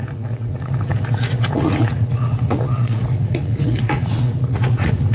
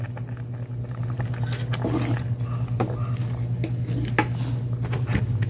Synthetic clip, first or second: first